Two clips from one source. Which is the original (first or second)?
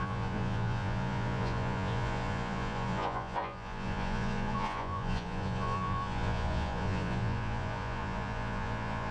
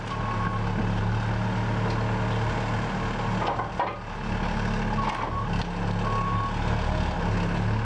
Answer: second